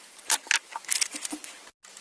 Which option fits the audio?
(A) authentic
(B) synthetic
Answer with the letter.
A